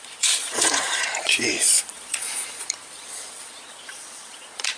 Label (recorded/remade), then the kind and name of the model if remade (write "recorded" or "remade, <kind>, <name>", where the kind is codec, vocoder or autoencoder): remade, vocoder, Vocos